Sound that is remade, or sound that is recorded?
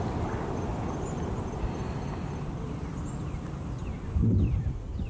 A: recorded